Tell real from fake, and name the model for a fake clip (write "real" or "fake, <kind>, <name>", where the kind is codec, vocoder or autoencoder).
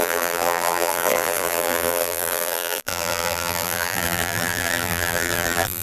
fake, vocoder, BigVGAN v2